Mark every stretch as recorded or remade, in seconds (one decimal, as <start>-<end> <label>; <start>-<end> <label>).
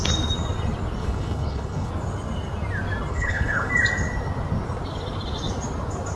0.0-1.0 recorded; 1.0-1.9 remade; 1.9-3.1 recorded; 3.1-3.7 remade; 3.7-6.2 recorded